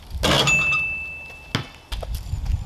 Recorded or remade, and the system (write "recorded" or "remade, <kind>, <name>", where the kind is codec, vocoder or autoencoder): recorded